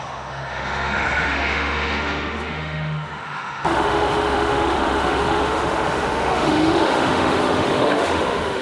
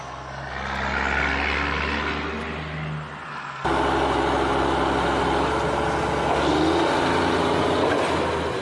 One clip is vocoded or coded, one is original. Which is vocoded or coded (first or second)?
first